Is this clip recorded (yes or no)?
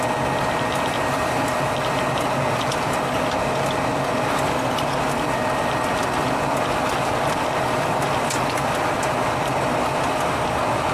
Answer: yes